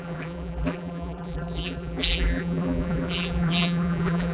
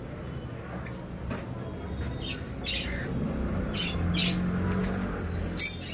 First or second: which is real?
second